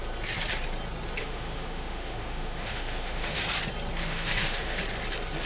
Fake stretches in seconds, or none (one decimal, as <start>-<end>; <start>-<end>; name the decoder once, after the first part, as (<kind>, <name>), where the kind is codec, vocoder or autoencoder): 1.2-3.4 (autoencoder, DAC-VAE); 4.0-4.8

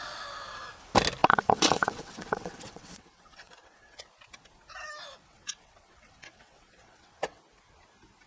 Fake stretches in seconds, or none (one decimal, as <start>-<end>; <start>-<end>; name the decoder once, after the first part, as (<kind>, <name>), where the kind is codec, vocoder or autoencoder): 1.2-4.1 (vocoder, WaveNeXt); 5.2-7.4

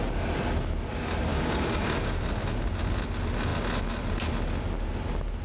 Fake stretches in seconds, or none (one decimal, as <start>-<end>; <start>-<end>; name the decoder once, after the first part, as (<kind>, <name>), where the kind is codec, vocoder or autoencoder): 1.3-2.2 (codec, DAC)